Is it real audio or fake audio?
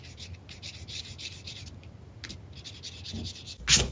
real